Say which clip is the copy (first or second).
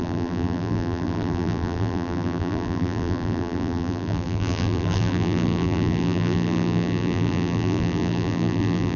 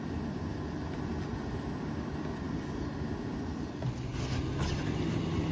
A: first